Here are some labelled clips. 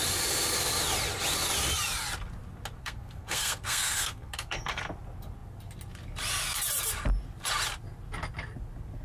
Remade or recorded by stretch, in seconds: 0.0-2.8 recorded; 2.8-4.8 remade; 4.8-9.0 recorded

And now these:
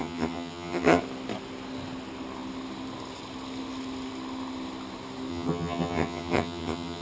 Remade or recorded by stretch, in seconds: 0.0-1.0 remade; 1.0-5.3 recorded; 5.3-7.0 remade

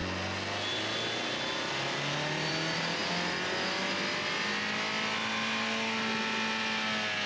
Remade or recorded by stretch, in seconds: 0.0-7.3 recorded

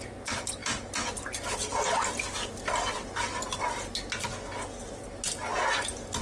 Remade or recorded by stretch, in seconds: 0.0-6.2 recorded

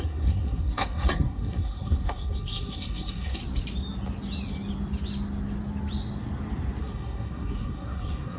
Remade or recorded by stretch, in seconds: 0.0-3.4 remade; 3.4-6.8 recorded; 6.8-8.4 remade

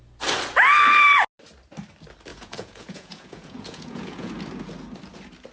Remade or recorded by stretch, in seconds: 0.0-2.3 recorded; 2.3-4.3 remade; 4.3-5.5 recorded

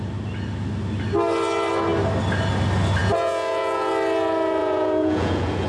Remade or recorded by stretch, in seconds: 0.0-3.0 recorded; 3.0-3.9 remade; 3.9-4.6 recorded; 4.6-5.7 remade